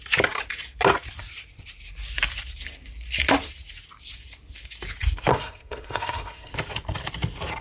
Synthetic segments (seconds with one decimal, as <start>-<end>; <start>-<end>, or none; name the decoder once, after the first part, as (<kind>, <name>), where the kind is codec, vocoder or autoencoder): 5.3-6.5 (codec, SNAC)